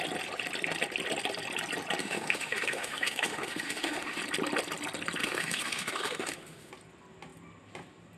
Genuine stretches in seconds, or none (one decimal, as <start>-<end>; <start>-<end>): 0.0-2.0; 4.2-5.2; 6.7-8.2